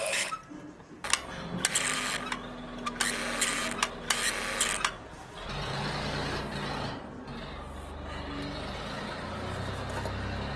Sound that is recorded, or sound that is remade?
recorded